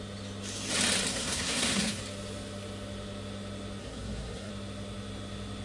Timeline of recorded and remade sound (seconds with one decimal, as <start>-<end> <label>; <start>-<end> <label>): 0.0-1.1 recorded; 1.1-2.0 remade; 2.0-3.8 recorded; 3.8-4.5 remade; 4.5-5.6 recorded